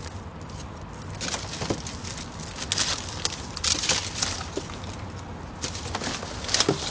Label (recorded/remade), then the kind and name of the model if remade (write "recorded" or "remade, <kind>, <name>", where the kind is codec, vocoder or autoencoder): recorded